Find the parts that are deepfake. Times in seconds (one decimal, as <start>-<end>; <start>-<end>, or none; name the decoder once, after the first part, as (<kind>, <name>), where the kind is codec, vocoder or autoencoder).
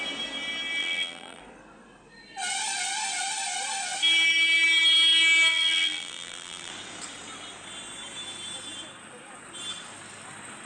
0.8-1.4 (vocoder, BigVGAN v2); 5.5-6.7